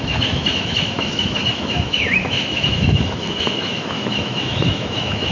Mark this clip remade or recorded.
remade